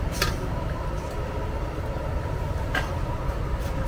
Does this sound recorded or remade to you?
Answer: recorded